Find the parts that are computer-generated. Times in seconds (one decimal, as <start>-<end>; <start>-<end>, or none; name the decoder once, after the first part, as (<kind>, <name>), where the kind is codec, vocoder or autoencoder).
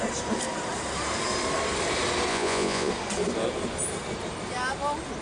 2.3-2.9 (vocoder, Vocos)